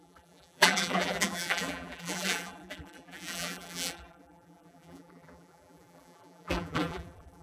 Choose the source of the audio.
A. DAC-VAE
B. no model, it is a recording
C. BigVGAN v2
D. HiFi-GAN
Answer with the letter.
C